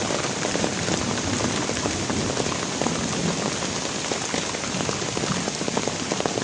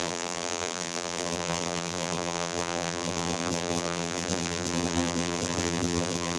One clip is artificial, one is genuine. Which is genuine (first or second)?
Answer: first